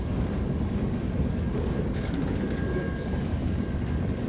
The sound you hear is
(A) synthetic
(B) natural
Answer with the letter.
A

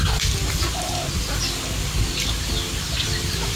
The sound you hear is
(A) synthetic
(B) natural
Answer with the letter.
B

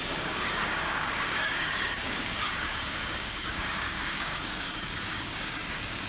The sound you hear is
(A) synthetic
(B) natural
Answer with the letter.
A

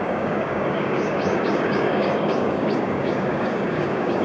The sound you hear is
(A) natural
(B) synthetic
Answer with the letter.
B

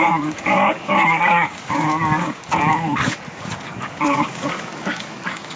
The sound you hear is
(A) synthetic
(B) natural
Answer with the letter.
A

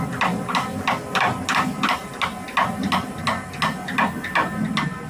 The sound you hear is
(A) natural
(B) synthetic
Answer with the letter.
A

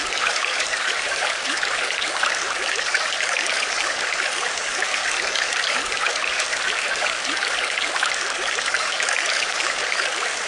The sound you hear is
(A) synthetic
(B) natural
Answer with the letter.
A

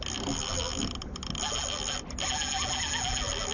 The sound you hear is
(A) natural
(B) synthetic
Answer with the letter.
A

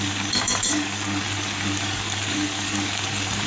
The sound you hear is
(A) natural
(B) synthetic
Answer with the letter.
B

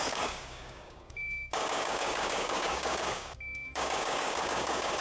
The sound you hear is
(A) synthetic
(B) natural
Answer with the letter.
A